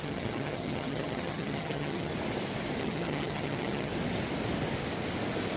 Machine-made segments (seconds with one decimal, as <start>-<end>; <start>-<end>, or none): 0.0-2.1; 2.8-3.9